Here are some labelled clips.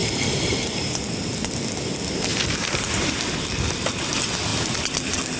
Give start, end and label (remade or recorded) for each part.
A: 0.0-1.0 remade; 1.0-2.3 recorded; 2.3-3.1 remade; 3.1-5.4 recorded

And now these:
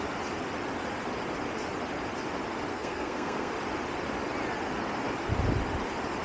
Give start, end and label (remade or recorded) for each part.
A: 0.0-2.7 recorded; 2.7-3.5 remade; 3.5-6.2 recorded

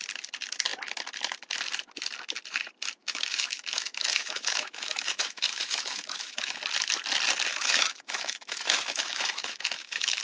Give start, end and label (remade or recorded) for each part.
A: 0.0-3.0 recorded; 3.0-6.6 remade; 6.6-7.5 recorded; 7.5-10.2 remade

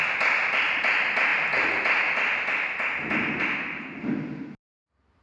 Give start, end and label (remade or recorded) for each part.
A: 0.0-5.2 recorded

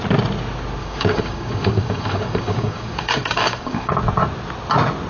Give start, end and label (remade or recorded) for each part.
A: 0.0-0.8 recorded; 0.8-3.9 remade; 3.9-5.1 recorded

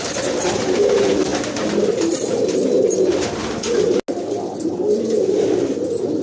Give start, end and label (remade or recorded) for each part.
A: 0.0-6.2 recorded

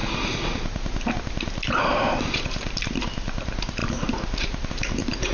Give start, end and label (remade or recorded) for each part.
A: 0.0-1.8 recorded; 1.8-5.3 remade